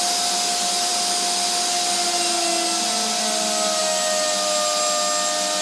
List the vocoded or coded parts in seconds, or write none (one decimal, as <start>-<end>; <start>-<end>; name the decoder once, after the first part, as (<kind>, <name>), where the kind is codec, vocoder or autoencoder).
none